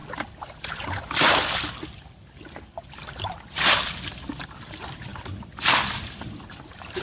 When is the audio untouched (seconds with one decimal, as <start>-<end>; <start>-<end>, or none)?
0.0-7.0

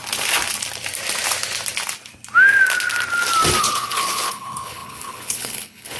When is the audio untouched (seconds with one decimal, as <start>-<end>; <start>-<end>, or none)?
0.0-3.6

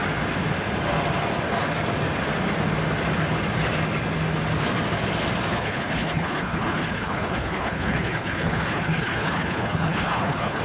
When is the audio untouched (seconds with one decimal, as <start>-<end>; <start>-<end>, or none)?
0.0-5.5

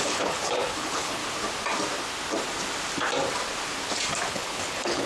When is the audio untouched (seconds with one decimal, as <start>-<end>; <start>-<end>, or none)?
1.2-4.3